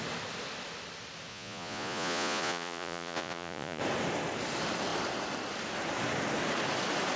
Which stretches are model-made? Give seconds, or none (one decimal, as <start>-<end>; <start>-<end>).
1.3-3.8